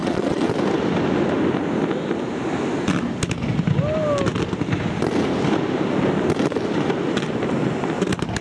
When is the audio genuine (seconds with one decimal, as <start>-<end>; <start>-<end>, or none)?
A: 0.5-8.4